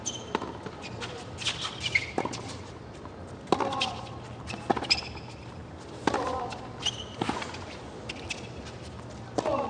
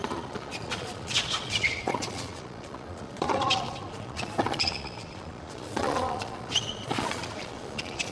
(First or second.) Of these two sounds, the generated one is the second